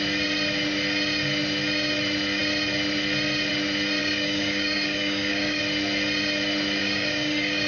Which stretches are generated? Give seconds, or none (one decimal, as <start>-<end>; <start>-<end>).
4.0-5.6; 6.8-7.7